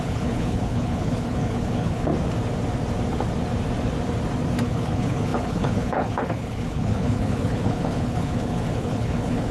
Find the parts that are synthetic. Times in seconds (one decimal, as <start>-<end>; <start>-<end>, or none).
0.0-2.1; 4.6-9.5